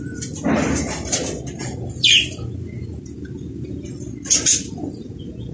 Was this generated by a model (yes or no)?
no